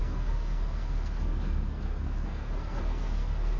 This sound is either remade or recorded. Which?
remade